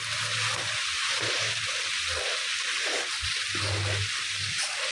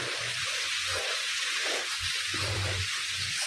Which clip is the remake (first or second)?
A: second